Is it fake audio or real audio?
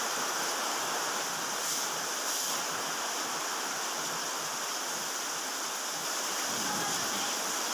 fake